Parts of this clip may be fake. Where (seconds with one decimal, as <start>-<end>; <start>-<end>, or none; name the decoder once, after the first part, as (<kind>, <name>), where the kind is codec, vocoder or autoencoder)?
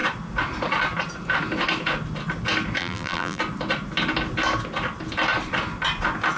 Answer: 2.8-3.4 (vocoder, BigVGAN v2)